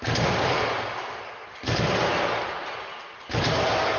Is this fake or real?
real